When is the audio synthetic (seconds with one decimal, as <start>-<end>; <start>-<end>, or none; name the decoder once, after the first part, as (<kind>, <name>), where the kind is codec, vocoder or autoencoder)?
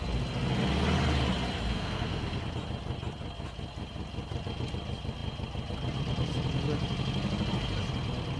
1.7-2.4 (codec, SNAC)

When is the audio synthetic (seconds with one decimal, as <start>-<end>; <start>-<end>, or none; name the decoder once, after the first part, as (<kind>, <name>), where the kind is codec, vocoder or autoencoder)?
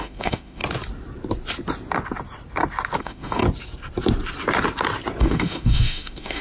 0.0-0.6 (autoencoder, DAC-VAE); 3.0-3.4; 5.2-6.4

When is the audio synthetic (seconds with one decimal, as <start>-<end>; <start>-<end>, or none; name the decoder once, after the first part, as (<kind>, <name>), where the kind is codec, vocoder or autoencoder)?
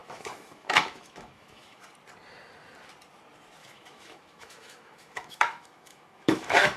0.0-1.8 (autoencoder, DAC-VAE); 3.6-6.8